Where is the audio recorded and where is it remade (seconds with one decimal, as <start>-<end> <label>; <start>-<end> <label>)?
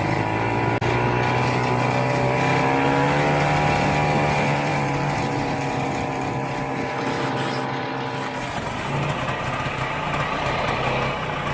0.0-4.7 recorded; 4.7-7.9 remade; 7.9-11.5 recorded